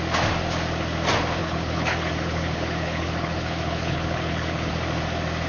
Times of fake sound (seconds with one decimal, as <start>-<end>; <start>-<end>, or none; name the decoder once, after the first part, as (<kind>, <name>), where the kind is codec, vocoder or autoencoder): 1.4-4.7 (codec, HILCodec)